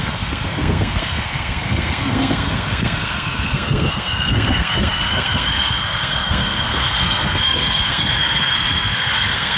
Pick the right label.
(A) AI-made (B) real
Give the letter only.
A